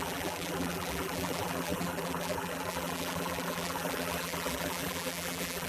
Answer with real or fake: fake